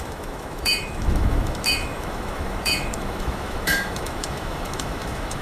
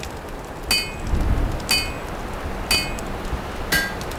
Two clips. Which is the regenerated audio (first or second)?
first